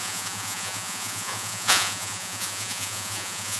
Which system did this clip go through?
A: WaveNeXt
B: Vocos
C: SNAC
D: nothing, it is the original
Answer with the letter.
B